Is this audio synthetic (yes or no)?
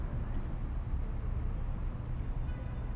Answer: no